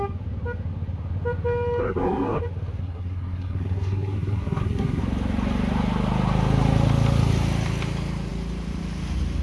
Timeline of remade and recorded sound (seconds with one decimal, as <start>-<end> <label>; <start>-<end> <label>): 0.0-1.8 recorded; 1.8-2.4 remade; 2.4-2.8 recorded; 2.8-5.0 remade; 5.0-9.4 recorded